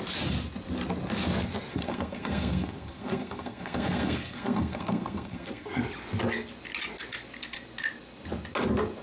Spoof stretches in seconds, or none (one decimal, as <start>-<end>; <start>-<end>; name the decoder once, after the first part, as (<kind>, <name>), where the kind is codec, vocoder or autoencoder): 1.7-5.8 (codec, SNAC)